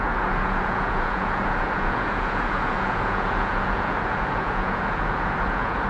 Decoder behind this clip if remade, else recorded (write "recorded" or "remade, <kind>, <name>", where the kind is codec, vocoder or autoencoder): remade, vocoder, Vocos